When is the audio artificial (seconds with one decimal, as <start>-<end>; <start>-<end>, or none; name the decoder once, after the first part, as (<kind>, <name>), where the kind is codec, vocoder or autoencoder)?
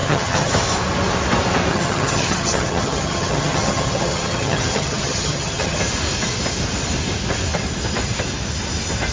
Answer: 0.0-0.5 (vocoder, HiFi-GAN); 1.7-5.8